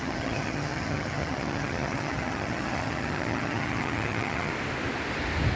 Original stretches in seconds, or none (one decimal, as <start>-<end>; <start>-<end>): 4.5-5.6